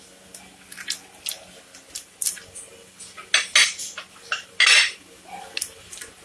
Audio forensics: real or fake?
real